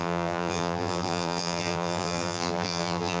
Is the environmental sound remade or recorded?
remade